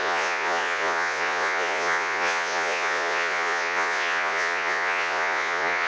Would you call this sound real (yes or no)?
no